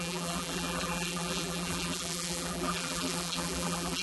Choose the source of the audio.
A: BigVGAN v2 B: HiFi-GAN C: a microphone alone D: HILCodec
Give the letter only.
A